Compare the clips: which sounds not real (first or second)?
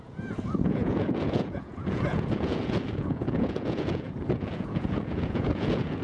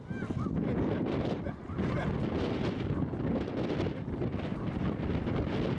first